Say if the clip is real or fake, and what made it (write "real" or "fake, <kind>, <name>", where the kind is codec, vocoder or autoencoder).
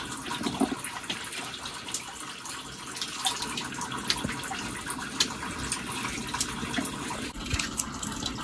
real